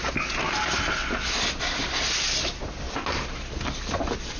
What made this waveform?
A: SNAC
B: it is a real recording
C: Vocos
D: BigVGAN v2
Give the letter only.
B